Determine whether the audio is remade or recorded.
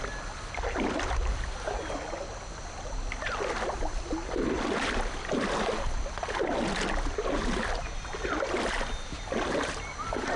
recorded